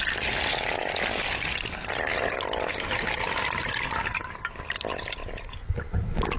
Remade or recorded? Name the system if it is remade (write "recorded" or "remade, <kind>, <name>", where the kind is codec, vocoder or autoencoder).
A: recorded